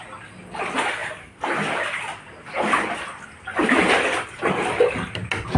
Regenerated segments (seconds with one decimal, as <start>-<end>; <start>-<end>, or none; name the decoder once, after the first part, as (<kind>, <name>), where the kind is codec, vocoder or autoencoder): none